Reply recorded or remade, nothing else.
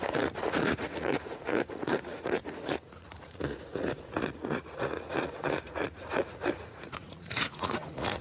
remade